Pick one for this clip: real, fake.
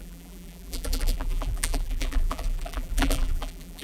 fake